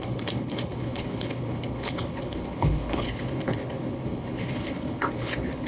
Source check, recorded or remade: remade